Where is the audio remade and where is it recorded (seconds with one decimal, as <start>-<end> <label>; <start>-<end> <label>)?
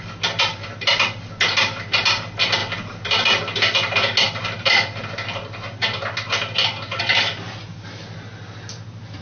0.0-9.2 recorded